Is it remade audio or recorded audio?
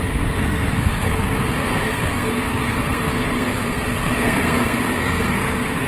remade